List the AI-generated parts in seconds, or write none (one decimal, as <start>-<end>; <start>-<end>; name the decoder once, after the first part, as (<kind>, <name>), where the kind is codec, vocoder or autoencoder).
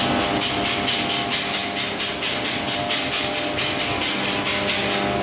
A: none